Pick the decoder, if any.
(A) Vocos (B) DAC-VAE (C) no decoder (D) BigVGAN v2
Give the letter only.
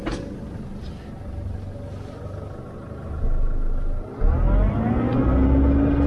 C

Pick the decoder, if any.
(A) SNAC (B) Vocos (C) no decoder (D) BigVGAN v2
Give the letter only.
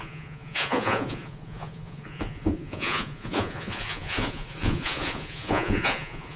B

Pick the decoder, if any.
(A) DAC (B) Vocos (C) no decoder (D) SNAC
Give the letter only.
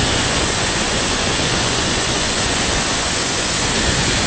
B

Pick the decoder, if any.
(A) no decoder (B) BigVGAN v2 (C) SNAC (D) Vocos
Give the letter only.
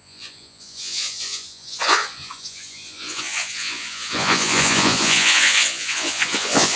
D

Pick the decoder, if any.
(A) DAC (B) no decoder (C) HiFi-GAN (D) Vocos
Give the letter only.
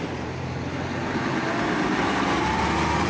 B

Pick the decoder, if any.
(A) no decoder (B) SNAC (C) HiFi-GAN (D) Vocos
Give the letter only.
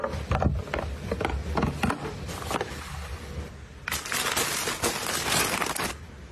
A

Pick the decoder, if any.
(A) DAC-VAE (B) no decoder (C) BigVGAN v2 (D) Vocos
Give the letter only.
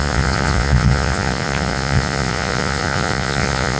D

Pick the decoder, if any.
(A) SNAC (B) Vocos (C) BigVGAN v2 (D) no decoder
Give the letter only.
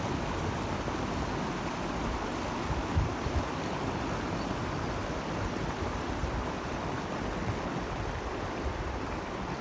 D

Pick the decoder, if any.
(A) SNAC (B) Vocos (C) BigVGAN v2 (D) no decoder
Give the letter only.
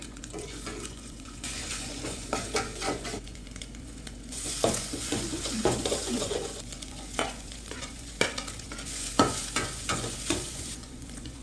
B